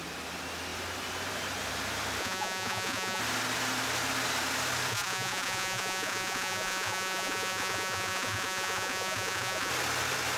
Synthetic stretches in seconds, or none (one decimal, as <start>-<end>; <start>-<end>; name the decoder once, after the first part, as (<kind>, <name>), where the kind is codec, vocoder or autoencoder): 2.2-3.2 (vocoder, Vocos); 4.9-9.7